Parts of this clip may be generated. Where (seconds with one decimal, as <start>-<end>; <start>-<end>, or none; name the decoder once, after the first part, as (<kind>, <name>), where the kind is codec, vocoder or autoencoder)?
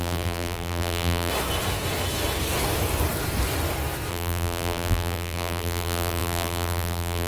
0.0-1.3 (vocoder, BigVGAN v2); 4.1-7.3